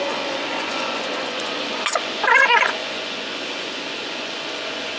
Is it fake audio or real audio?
fake